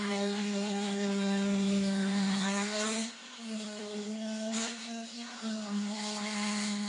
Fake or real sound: fake